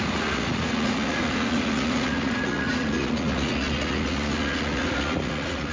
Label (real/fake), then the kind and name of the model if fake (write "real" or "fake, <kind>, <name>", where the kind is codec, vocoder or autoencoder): fake, vocoder, Vocos